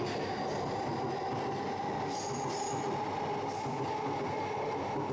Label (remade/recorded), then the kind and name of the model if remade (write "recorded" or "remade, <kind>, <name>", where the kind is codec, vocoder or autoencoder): recorded